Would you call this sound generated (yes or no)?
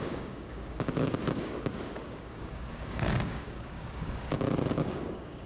yes